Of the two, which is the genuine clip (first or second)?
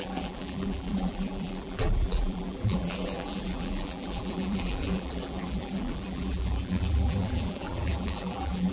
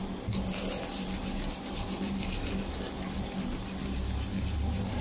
second